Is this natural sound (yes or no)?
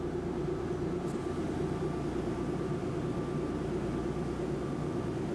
yes